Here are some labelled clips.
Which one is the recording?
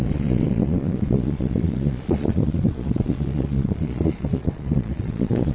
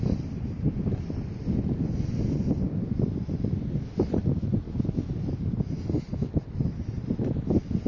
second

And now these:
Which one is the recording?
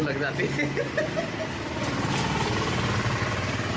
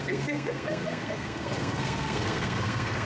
first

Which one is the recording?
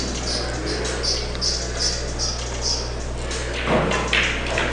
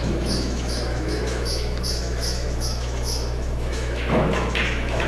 first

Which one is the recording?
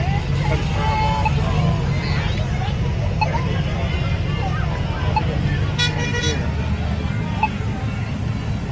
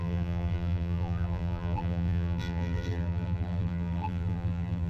first